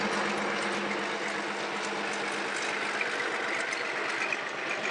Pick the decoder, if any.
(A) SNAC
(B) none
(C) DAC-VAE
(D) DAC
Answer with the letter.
B